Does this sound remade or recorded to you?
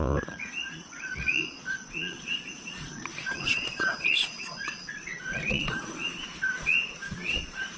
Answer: remade